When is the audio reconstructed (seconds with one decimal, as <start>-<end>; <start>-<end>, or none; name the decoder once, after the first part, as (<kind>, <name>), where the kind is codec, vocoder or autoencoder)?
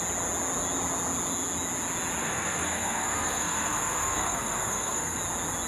2.2-5.2 (codec, SNAC)